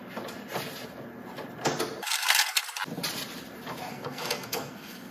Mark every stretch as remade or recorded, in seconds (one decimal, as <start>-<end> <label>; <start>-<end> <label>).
0.0-2.0 recorded; 2.0-2.6 remade; 2.6-3.9 recorded; 3.9-5.1 remade